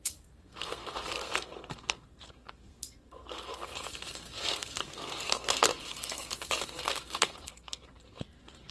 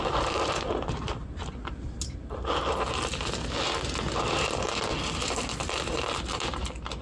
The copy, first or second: first